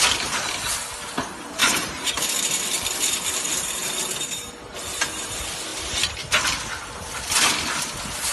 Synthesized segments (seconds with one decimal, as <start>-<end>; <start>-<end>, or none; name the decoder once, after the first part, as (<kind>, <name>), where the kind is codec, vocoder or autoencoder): 1.6-2.2 (vocoder, BigVGAN v2)

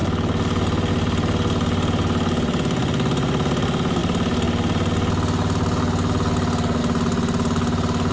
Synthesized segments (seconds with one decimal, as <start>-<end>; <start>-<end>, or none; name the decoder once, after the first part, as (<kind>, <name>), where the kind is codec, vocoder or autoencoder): none

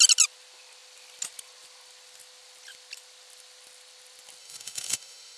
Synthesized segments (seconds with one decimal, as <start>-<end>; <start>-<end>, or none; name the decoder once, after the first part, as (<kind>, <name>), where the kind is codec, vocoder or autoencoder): 4.4-5.4 (autoencoder, DAC-VAE)